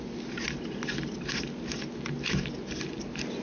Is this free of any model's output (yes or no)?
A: yes